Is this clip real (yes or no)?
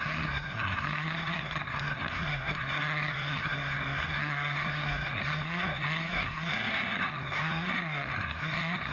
no